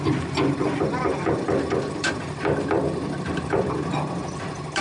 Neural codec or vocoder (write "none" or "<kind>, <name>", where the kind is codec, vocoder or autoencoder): vocoder, BigVGAN v2